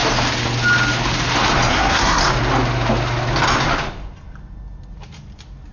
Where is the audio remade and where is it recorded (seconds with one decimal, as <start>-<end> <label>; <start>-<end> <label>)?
0.0-1.7 recorded; 1.7-2.2 remade; 2.2-5.7 recorded